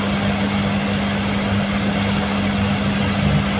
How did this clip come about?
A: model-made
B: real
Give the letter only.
B